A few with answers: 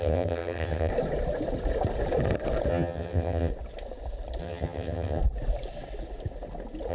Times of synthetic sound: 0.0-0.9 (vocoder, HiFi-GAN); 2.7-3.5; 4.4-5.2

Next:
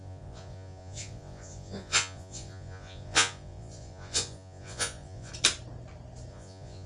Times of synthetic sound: 0.0-5.3 (vocoder, Vocos); 6.3-6.9